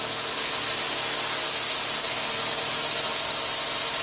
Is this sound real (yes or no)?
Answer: yes